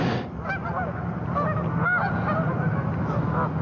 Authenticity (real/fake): real